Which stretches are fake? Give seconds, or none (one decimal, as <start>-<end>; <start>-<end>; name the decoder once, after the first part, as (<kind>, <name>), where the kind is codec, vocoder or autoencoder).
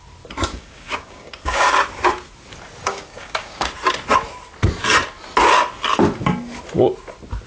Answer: 0.5-1.7 (codec, DAC); 2.8-3.7